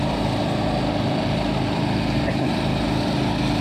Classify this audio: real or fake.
real